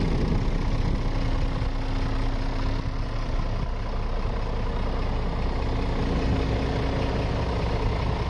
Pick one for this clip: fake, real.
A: real